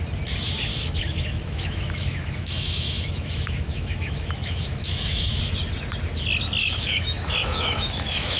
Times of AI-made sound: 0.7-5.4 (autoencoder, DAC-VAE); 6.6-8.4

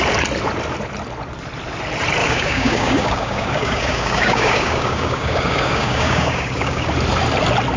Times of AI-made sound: 2.2-6.9 (codec, DAC)

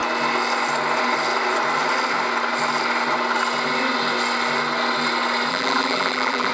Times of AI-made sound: 5.5-6.5 (vocoder, BigVGAN v2)

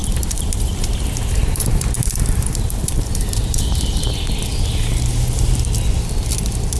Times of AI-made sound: 0.0-4.1 (vocoder, BigVGAN v2); 4.5-5.5

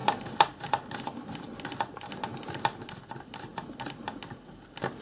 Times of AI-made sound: none

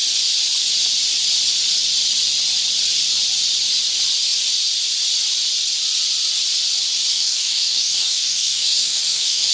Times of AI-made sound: 7.1-9.5 (codec, DAC)